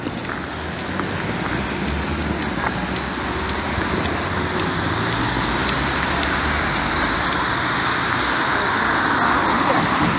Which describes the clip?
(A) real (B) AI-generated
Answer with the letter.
A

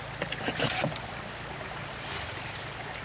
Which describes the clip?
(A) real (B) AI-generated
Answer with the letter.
A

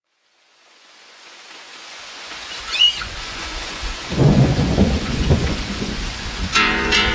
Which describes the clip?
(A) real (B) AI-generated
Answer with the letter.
B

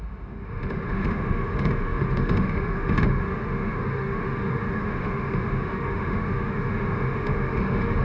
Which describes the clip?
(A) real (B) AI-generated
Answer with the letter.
B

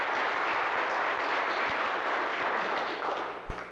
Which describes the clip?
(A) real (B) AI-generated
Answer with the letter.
A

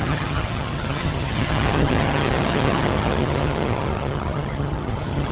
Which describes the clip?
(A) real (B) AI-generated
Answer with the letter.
B